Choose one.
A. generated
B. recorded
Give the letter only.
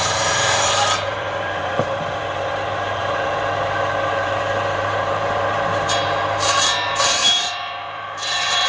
A